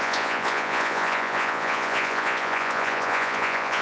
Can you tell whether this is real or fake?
fake